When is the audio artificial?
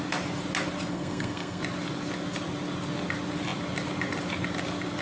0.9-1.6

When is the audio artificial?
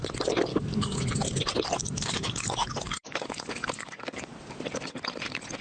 0.5-1.0; 1.8-4.3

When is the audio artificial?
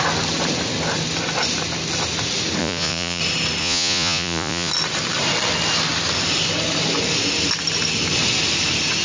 2.6-3.2; 3.6-4.7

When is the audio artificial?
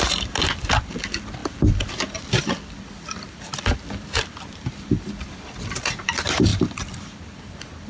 0.0-7.9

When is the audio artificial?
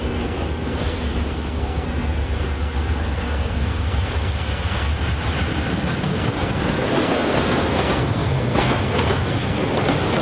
0.0-4.9; 5.9-10.2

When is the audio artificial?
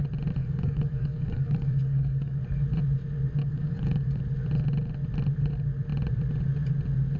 0.4-2.4; 3.4-4.2